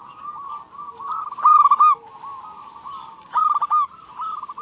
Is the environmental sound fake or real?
real